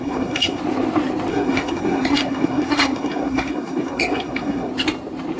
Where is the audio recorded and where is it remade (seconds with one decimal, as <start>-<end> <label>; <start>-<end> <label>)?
0.0-0.6 remade; 0.6-1.3 recorded; 1.3-4.7 remade; 4.7-5.4 recorded